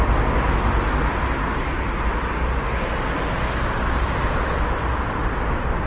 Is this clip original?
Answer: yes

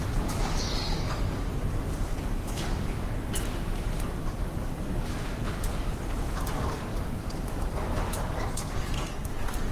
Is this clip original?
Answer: no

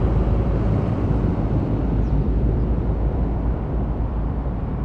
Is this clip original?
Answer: no